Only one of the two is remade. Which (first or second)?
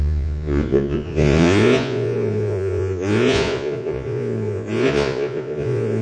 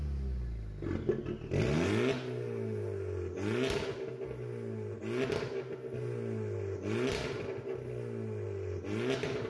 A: first